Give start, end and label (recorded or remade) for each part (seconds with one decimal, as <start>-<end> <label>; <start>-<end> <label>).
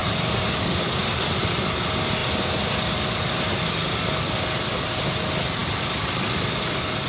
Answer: 0.0-0.8 remade; 0.8-5.6 recorded; 5.6-7.1 remade